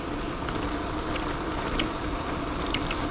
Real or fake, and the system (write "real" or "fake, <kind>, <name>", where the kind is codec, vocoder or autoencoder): real